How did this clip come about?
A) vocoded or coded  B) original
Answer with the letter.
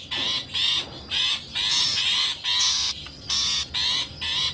B